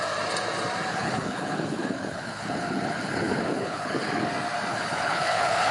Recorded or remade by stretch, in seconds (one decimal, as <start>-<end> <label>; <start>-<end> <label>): 0.0-0.9 recorded; 0.9-4.3 remade; 4.3-4.7 recorded; 4.7-5.7 remade